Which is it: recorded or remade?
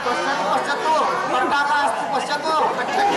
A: recorded